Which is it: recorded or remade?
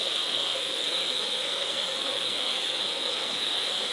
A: remade